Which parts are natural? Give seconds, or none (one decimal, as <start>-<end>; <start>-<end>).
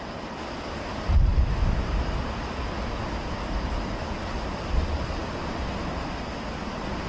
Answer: 0.0-7.1